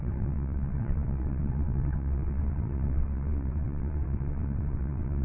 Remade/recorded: remade